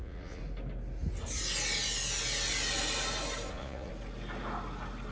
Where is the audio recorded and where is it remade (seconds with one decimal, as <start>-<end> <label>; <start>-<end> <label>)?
0.0-0.4 remade; 0.4-3.5 recorded; 3.5-3.9 remade; 3.9-5.1 recorded